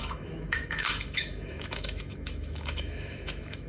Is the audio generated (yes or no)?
yes